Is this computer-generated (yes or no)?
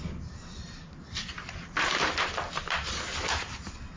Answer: no